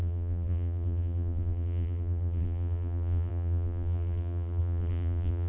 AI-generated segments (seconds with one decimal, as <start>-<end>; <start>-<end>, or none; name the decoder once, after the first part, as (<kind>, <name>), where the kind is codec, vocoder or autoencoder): 0.0-5.5 (vocoder, BigVGAN v2)